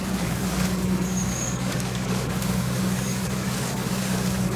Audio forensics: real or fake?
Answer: fake